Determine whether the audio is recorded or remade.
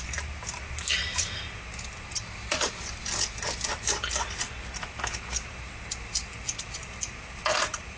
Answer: recorded